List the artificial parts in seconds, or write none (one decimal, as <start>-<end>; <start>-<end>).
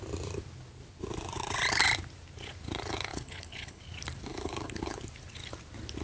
3.1-3.8; 4.3-5.0